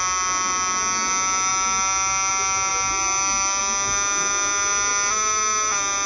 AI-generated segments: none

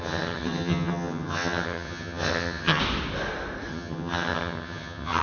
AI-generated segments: 0.0-2.8 (vocoder, HiFi-GAN); 3.7-5.2

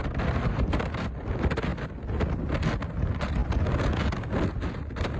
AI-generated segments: none

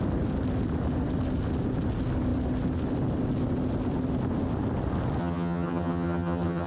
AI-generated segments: 5.2-6.7 (vocoder, HiFi-GAN)